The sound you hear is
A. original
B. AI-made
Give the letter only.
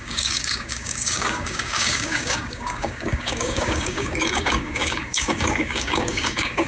B